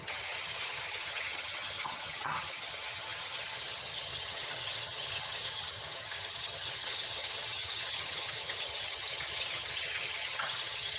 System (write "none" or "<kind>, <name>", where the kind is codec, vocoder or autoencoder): vocoder, HiFi-GAN